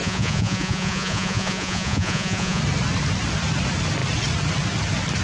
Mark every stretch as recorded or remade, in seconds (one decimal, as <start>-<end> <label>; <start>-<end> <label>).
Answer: 0.0-2.6 remade; 2.6-5.2 recorded